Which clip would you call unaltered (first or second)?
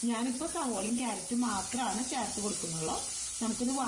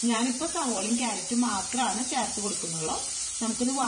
first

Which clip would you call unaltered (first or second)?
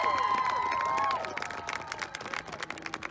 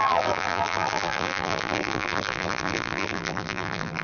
first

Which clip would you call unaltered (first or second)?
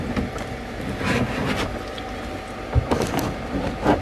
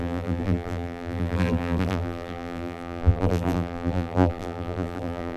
first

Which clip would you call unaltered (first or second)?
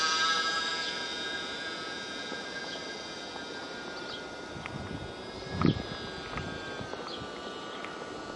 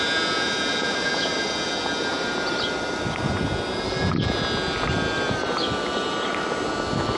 second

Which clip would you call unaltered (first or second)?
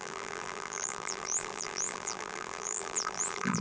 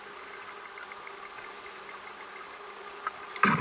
second